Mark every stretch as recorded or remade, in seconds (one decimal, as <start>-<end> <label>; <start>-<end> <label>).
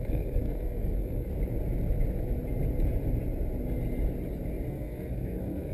0.0-1.3 remade; 1.3-4.7 recorded; 4.7-5.7 remade